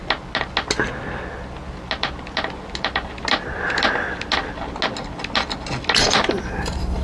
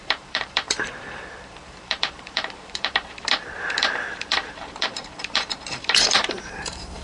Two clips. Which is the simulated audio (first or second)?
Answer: second